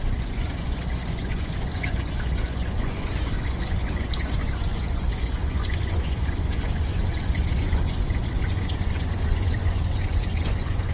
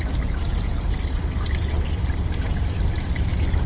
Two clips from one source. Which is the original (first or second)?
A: second